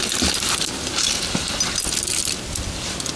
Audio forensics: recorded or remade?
recorded